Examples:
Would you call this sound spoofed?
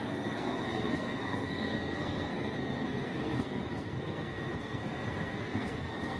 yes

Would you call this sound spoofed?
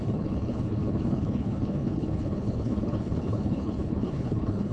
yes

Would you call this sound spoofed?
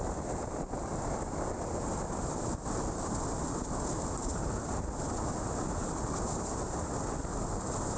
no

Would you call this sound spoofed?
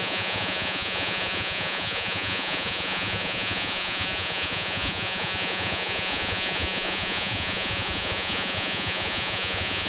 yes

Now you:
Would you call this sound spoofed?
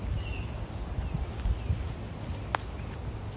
no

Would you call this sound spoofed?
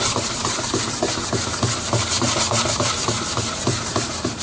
yes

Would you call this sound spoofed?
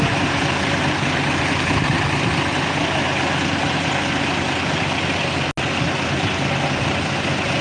no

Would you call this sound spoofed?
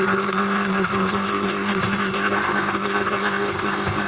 yes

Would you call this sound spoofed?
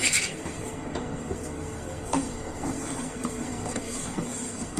yes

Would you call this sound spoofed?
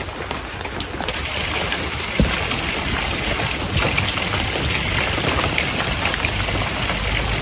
no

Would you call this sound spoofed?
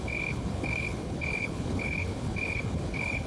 yes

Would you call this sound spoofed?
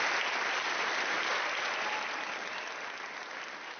no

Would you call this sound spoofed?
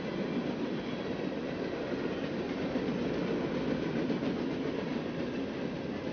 no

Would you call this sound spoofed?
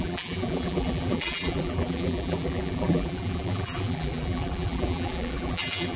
yes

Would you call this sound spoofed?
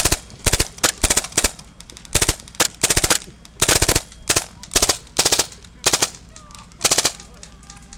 no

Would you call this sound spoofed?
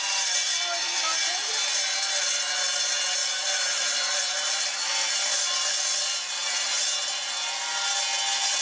no